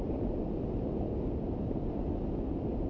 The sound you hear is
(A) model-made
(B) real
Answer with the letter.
B